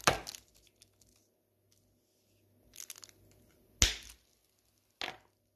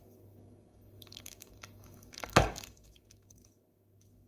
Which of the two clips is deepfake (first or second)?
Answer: second